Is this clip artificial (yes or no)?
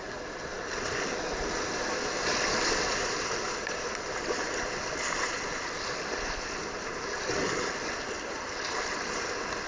no